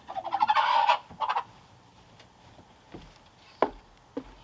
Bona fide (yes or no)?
yes